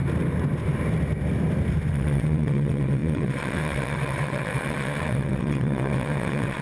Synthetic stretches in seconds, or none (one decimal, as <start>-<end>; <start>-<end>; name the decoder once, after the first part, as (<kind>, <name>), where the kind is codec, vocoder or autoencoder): 1.9-6.6 (vocoder, WaveNeXt)